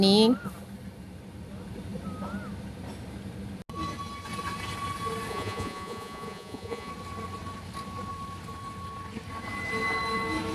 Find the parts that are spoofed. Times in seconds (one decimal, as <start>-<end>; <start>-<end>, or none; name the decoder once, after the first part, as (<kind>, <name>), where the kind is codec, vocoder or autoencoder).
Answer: 5.3-6.9 (vocoder, Vocos)